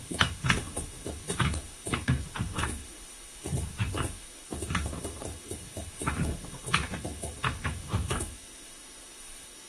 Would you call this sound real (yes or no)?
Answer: no